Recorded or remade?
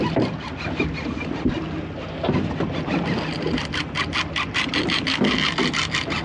recorded